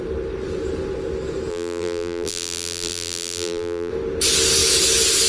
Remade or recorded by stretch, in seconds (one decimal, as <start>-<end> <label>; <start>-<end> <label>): 0.0-1.5 recorded; 1.5-3.9 remade; 3.9-5.3 recorded